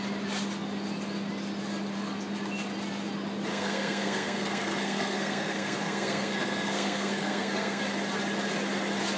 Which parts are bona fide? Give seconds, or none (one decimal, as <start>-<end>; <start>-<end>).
0.0-3.5; 7.8-9.2